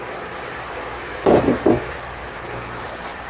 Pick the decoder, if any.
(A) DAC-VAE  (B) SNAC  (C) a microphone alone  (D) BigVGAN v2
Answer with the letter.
D